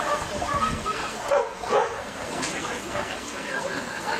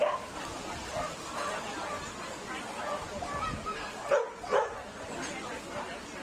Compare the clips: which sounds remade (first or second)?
first